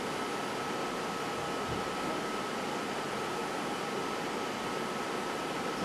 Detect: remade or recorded recorded